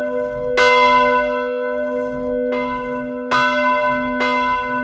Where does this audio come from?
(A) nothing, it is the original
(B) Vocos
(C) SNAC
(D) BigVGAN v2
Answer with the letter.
A